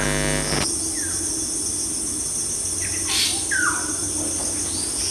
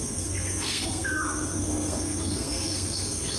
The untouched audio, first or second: first